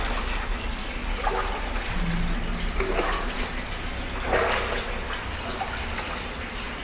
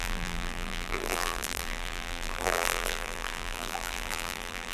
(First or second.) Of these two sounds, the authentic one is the first